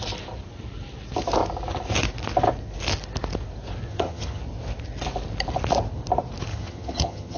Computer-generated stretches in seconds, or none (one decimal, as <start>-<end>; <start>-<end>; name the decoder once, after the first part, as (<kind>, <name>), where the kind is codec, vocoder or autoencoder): 3.9-4.4 (vocoder, HiFi-GAN); 6.5-7.4